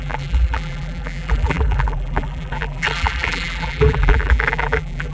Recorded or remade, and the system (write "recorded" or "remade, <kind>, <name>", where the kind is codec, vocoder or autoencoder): remade, vocoder, BigVGAN v2